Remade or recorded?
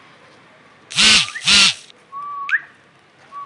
recorded